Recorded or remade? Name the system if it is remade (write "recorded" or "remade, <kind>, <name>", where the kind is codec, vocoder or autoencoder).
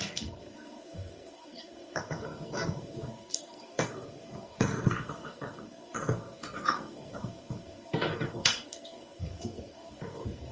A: remade, codec, SNAC